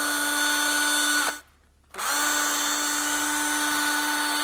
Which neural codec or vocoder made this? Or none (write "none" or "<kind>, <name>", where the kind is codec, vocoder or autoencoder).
none